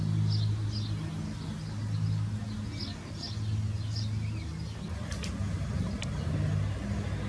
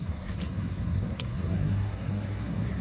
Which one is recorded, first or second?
first